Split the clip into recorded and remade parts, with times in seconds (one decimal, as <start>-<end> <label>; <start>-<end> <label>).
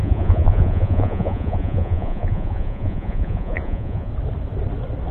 0.0-4.1 remade; 4.1-5.1 recorded